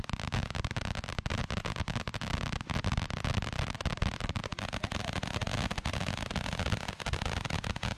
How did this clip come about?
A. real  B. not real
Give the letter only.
A